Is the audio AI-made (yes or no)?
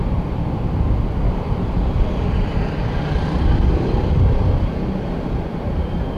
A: no